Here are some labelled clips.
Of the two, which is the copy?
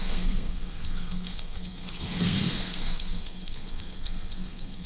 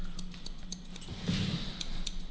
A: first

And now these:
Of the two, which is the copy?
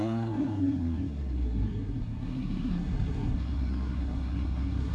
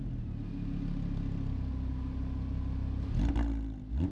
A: first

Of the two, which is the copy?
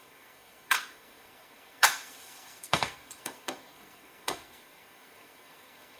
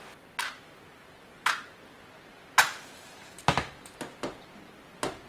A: first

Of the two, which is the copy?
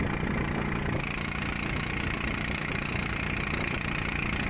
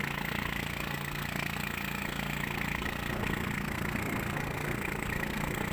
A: second